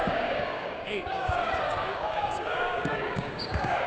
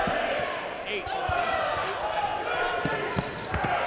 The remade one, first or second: first